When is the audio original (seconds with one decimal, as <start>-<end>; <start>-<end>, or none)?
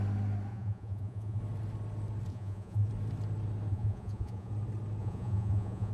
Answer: 0.0-0.5; 1.4-2.3; 2.9-3.7; 4.5-5.0